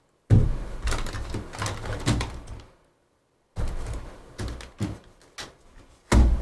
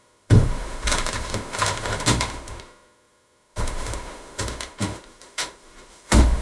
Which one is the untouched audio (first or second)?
first